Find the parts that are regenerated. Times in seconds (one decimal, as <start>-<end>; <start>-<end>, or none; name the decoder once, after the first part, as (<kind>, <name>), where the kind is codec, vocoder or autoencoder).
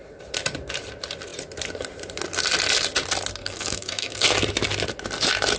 3.4-4.3 (codec, SNAC)